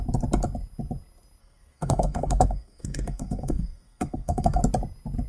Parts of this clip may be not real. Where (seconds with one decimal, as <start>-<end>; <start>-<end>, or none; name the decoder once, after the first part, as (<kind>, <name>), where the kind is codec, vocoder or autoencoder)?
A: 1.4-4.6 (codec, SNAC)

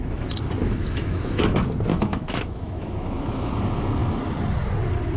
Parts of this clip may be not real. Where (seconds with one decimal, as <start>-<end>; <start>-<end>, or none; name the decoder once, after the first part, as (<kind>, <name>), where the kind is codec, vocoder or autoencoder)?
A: 0.6-1.4 (autoencoder, DAC-VAE); 1.9-3.5

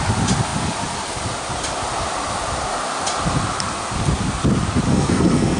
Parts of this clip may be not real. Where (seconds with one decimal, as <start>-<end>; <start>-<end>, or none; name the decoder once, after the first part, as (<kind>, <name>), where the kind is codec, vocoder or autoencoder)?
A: 4.9-5.6 (codec, SNAC)

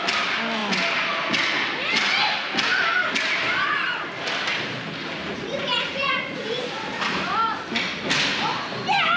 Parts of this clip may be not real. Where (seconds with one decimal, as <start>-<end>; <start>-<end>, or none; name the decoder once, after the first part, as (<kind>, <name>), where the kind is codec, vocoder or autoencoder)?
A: 5.2-6.6 (vocoder, Vocos)

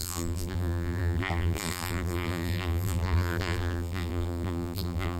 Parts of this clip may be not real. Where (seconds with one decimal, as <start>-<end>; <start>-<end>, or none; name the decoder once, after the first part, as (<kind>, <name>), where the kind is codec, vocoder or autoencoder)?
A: 0.0-5.2 (vocoder, BigVGAN v2)

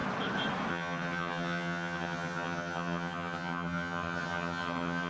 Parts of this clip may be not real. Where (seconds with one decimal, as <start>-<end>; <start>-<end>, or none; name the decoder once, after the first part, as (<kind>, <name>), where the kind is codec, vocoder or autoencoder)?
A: 0.7-5.1 (vocoder, HiFi-GAN)

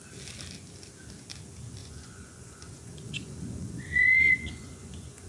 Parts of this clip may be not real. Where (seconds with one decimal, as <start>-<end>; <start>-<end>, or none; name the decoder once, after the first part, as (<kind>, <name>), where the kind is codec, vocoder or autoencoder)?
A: 1.8-5.3 (vocoder, Vocos)

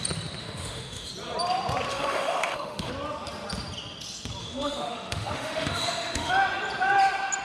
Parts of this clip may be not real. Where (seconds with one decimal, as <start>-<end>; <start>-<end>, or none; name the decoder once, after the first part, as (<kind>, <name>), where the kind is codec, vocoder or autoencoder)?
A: 0.4-1.1 (autoencoder, DAC-VAE); 1.9-2.9; 4.4-6.3